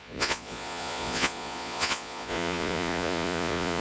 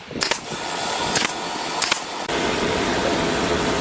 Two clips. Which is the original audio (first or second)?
second